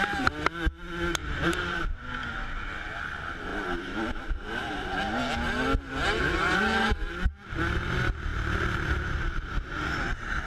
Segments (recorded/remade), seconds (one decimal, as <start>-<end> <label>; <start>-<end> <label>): 0.0-1.2 recorded; 1.2-2.3 remade; 2.3-8.3 recorded; 8.3-9.4 remade; 9.4-10.5 recorded